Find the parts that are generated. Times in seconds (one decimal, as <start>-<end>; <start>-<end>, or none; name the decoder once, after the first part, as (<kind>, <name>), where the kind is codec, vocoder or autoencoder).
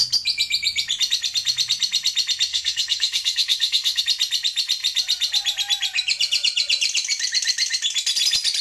2.5-4.0 (codec, SNAC)